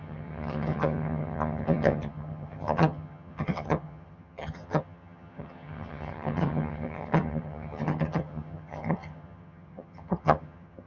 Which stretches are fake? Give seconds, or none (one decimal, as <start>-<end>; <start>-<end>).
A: 0.0-10.9

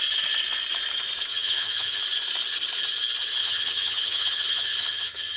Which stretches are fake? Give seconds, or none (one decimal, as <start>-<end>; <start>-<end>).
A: 1.3-2.0; 3.4-5.4

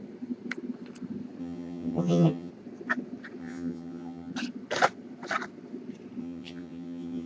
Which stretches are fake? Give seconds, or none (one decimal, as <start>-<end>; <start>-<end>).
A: 1.4-2.5; 3.4-4.3; 6.2-7.3

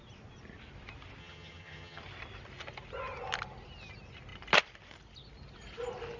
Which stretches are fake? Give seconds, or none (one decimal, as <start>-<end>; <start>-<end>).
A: 1.2-2.0

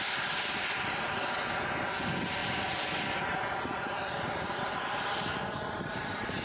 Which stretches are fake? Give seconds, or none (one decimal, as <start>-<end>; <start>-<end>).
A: none

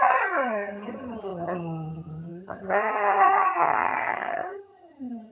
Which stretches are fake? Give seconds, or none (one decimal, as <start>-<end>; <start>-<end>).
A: 0.0-5.3

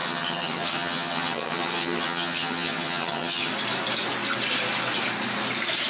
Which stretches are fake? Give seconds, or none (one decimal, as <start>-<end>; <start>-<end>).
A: 0.0-3.5

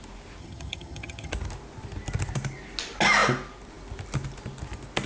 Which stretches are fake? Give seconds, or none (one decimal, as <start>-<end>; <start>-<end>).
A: 0.4-1.3